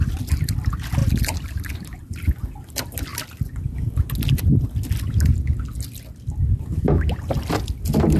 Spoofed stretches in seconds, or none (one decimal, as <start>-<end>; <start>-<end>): 1.0-2.0